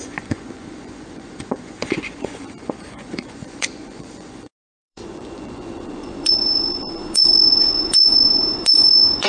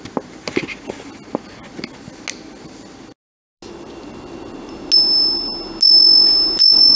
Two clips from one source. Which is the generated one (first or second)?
first